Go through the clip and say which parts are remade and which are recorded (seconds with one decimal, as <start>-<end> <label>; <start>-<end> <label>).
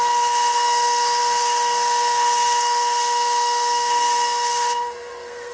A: 0.0-5.5 remade